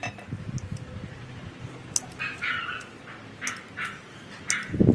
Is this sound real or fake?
real